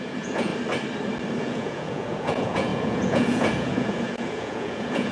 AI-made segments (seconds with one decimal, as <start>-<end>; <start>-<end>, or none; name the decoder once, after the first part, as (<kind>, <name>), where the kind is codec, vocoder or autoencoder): 0.0-0.5 (vocoder, Vocos); 1.4-5.1

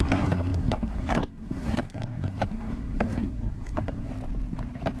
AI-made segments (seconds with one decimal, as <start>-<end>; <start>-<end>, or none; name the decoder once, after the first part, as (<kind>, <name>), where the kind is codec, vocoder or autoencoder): 0.0-4.1 (codec, SNAC)

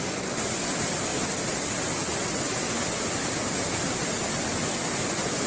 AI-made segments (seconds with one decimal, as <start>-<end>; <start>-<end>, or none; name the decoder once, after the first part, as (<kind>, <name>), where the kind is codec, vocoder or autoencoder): 0.0-1.1 (vocoder, Vocos); 2.3-3.2; 4.2-5.5

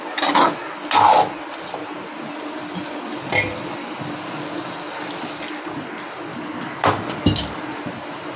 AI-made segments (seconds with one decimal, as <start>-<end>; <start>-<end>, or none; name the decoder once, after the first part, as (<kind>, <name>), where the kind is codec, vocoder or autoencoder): 6.3-7.6 (codec, DAC)

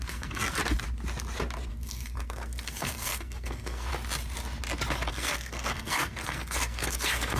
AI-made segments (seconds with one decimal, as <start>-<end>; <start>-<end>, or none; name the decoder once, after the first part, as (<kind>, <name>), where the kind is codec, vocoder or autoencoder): 0.0-0.6 (codec, SNAC); 1.7-3.9; 5.1-7.4